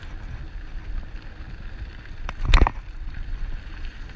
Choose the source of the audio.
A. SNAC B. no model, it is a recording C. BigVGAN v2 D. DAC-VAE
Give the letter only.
C